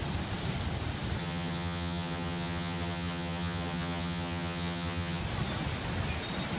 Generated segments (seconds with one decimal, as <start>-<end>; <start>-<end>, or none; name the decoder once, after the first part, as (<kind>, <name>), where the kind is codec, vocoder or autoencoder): 1.2-5.2 (vocoder, HiFi-GAN)